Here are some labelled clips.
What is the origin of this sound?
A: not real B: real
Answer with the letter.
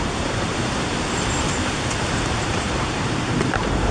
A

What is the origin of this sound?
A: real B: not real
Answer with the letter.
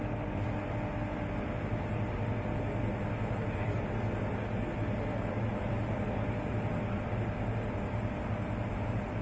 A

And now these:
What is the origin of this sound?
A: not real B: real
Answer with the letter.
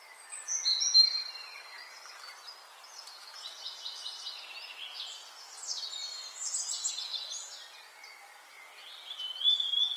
B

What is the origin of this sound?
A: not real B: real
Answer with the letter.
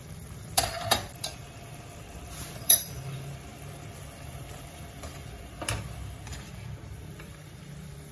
A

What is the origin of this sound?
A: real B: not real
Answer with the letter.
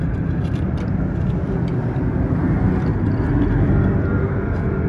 B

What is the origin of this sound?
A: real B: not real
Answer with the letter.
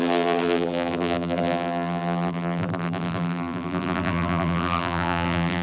B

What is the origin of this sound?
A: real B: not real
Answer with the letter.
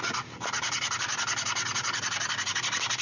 A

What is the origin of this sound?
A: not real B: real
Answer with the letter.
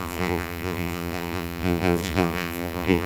A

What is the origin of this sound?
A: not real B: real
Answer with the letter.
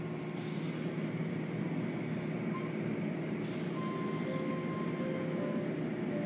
B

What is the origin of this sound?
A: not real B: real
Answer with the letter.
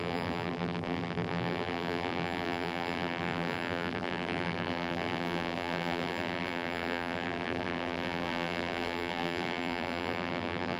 A